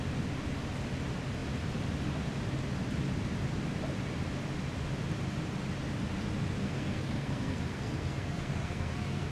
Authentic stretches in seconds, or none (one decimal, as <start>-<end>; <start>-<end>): 0.0-6.6